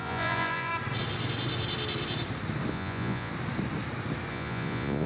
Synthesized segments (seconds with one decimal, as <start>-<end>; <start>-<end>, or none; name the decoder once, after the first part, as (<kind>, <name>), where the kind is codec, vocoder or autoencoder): 0.0-0.7 (vocoder, Vocos); 2.7-3.3; 4.3-5.1